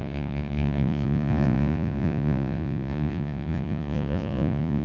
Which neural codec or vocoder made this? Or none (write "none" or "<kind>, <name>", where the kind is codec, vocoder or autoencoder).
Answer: vocoder, Vocos